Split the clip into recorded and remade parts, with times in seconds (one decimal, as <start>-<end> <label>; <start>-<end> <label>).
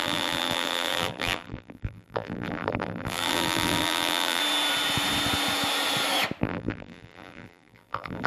0.0-4.4 remade; 4.4-6.4 recorded; 6.4-8.3 remade